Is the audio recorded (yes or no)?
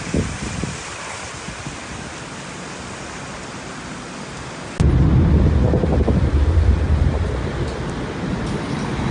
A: yes